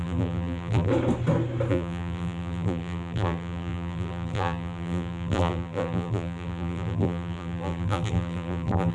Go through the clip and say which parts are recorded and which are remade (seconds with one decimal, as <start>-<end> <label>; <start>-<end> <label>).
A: 0.0-0.9 remade; 0.9-1.7 recorded; 1.7-8.9 remade